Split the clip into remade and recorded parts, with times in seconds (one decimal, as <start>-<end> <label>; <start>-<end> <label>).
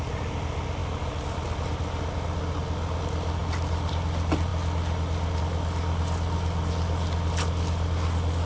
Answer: 0.0-8.5 recorded